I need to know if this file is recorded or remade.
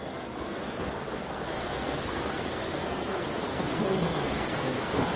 remade